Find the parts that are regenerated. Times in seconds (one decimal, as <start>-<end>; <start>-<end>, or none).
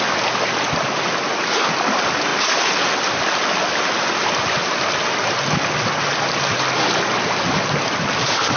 none